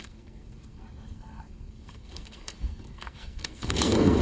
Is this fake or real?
fake